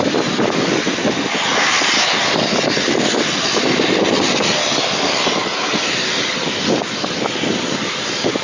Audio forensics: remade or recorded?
recorded